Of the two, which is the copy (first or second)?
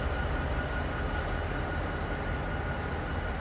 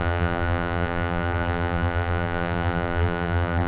second